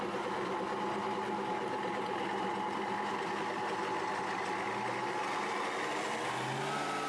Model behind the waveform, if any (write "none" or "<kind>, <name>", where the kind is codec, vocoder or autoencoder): none